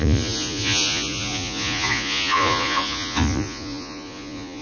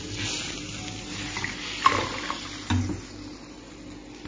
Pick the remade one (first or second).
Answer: first